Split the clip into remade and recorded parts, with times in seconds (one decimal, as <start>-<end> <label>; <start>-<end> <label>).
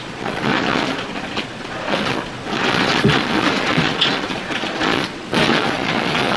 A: 0.0-6.4 remade